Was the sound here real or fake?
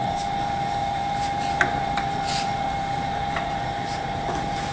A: fake